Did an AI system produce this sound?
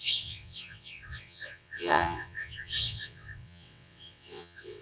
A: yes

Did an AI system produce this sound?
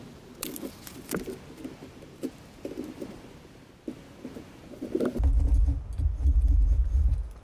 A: no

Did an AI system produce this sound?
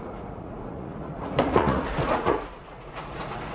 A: yes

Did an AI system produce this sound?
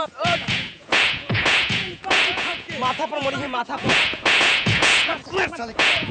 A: yes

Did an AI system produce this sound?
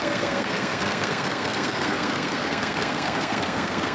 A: yes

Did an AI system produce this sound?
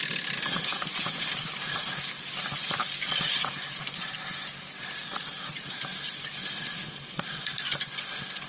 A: no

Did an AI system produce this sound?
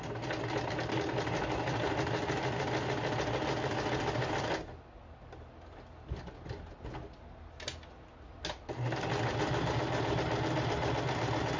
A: no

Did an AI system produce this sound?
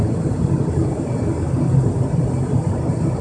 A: no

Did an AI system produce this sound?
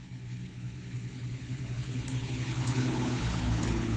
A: yes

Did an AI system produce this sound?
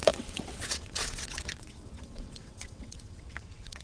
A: yes